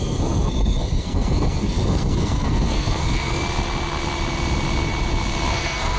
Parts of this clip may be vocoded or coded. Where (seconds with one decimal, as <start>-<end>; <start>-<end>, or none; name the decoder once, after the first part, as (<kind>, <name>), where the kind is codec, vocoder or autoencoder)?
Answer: 0.0-3.4 (codec, SNAC); 5.5-6.0